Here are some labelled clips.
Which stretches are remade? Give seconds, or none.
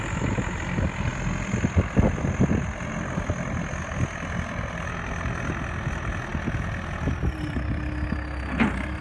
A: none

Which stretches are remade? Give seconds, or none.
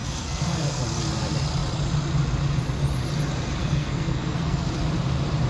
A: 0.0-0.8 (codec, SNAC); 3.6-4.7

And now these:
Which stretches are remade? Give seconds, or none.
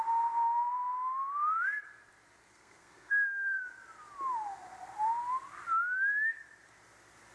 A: 2.4-3.6 (codec, SNAC)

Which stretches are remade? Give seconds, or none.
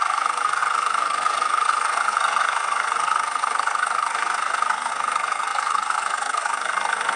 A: 0.0-7.2 (codec, SNAC)